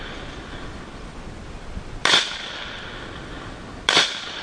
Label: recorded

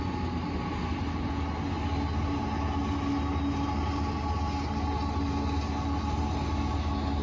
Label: recorded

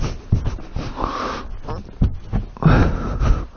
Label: recorded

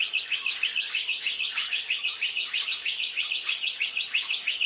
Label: remade